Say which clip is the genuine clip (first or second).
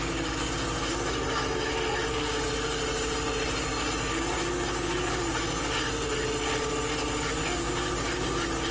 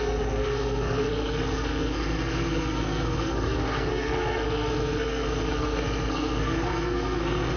first